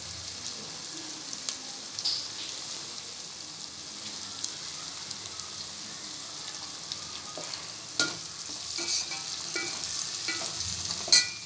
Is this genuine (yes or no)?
yes